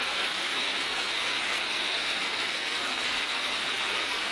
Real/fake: fake